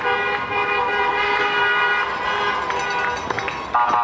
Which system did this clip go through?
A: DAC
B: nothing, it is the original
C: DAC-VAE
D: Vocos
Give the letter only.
B